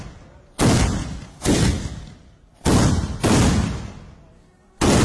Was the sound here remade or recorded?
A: recorded